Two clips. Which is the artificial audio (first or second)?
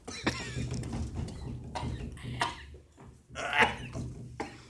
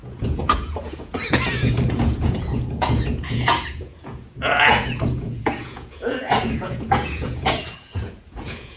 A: second